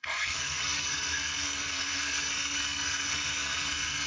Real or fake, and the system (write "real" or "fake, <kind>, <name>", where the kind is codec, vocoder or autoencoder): fake, codec, SNAC